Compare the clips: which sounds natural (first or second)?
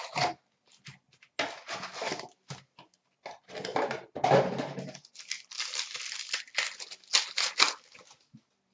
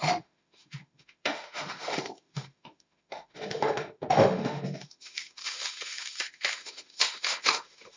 first